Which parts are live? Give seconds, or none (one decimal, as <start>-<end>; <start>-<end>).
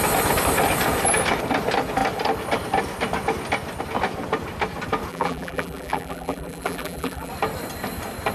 0.0-5.1; 7.3-8.3